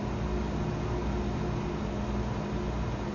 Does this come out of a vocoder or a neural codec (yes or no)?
no